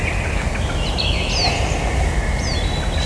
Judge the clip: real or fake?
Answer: real